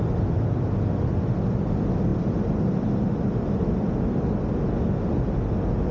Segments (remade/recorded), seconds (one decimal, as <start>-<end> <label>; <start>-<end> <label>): 0.0-5.9 recorded